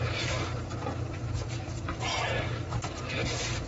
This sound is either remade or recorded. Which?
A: recorded